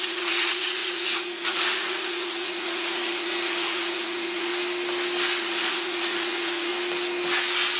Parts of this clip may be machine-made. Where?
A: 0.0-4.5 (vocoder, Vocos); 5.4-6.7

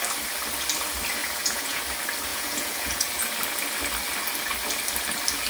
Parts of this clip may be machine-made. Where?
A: 1.2-1.8 (vocoder, Vocos); 2.3-3.2

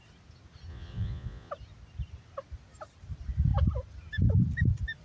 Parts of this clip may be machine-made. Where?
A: 0.7-1.5 (vocoder, Vocos)